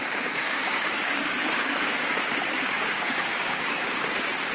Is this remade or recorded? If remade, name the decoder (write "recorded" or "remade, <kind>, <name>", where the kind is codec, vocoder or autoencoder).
remade, codec, DAC